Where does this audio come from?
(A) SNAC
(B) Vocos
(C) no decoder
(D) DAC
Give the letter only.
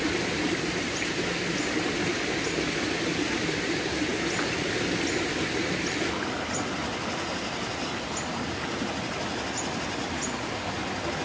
C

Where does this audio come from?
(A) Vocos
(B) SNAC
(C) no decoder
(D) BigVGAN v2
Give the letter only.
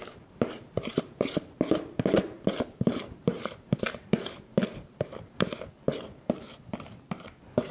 D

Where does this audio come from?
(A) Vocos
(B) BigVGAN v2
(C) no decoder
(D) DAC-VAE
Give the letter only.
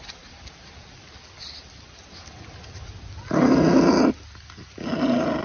C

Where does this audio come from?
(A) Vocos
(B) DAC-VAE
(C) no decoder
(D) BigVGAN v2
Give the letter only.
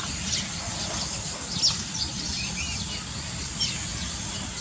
C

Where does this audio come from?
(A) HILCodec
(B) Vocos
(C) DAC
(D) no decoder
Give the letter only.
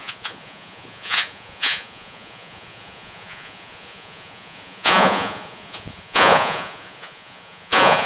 B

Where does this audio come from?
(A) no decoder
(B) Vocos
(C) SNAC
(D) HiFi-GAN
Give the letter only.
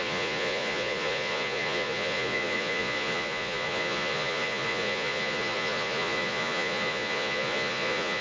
B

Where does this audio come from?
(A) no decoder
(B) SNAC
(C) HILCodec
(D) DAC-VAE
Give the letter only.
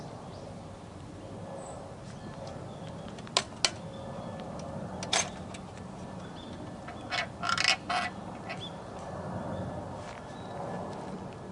A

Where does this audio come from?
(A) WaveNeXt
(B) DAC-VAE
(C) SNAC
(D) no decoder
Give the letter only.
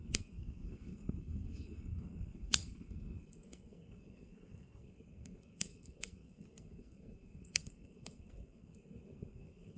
C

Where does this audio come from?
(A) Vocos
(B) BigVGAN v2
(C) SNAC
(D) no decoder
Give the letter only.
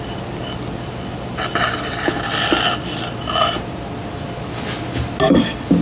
D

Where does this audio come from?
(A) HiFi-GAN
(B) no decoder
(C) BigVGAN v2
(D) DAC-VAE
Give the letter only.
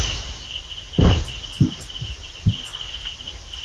C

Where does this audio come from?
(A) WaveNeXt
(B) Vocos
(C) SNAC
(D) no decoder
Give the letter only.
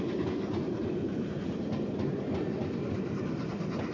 D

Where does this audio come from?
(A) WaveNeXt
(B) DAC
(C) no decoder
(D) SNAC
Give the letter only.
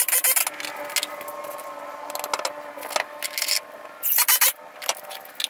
C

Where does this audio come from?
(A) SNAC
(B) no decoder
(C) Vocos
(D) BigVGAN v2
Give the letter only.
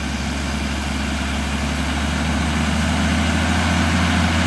B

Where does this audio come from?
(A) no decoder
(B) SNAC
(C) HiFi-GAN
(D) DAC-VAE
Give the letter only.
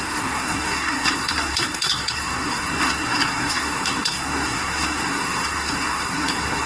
B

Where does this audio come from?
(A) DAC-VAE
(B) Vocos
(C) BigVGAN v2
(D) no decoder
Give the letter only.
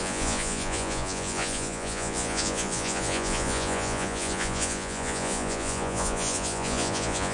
B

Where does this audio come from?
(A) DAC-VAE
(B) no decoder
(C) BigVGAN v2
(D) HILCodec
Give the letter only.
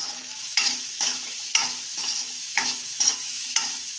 A